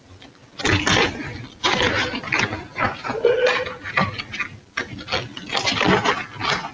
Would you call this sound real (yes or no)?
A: yes